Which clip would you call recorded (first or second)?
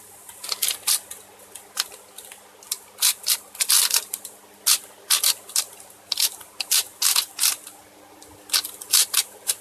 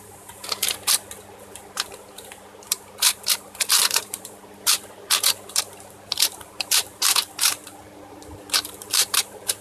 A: first